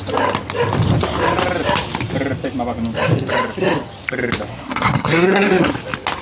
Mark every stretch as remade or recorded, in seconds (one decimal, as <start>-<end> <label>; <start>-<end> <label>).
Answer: 0.0-4.5 recorded; 4.5-5.7 remade; 5.7-6.2 recorded